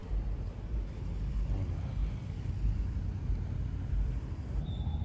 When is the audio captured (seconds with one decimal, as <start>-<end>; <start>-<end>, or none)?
0.0-5.0